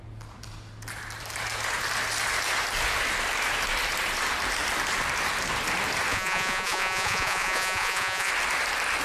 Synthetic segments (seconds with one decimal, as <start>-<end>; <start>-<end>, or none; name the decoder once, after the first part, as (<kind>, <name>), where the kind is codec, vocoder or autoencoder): 6.1-8.3 (vocoder, Vocos)